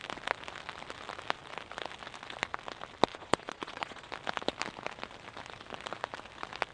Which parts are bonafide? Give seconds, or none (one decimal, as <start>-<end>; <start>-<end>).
0.0-3.1; 4.1-6.7